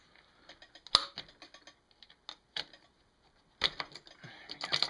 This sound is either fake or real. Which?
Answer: real